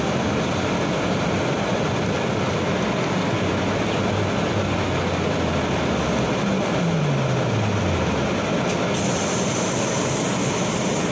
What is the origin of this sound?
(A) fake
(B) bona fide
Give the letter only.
B